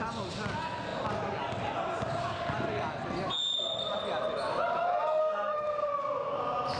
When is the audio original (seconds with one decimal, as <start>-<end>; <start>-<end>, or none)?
0.0-5.2; 5.9-6.8